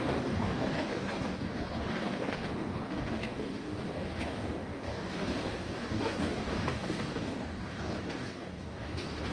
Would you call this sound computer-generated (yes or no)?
yes